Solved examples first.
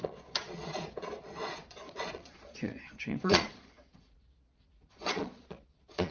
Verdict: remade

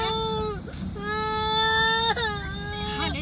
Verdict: recorded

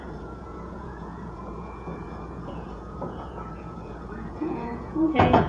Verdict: remade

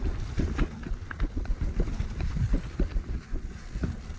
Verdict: recorded